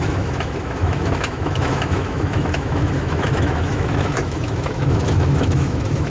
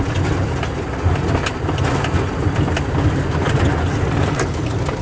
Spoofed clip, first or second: first